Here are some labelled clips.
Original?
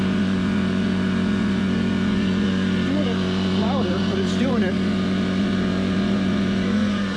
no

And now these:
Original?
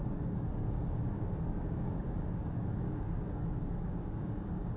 no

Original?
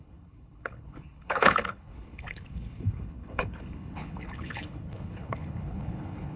no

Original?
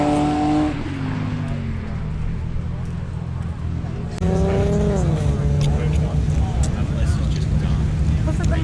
yes